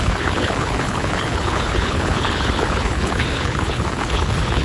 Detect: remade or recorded remade